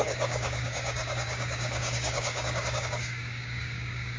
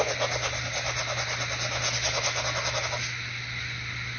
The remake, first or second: first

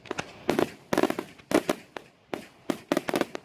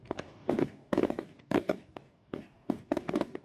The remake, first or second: second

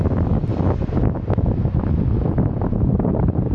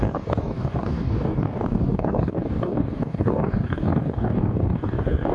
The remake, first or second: second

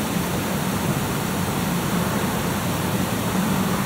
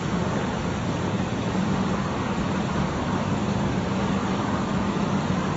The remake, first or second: second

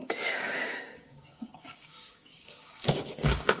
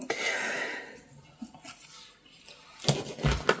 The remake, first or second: first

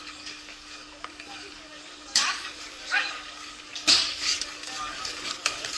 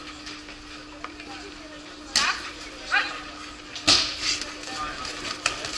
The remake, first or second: first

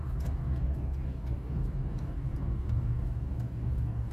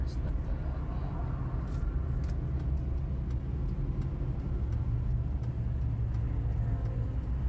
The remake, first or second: first